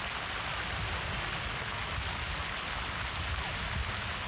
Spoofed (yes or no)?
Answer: no